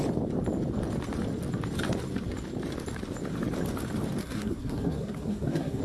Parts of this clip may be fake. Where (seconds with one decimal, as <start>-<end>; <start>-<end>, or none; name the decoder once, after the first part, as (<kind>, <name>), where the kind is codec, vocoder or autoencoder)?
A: 4.2-5.8 (codec, SNAC)